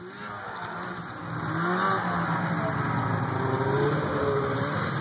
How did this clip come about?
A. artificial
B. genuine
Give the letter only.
B